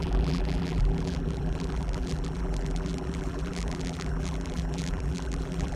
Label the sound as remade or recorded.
remade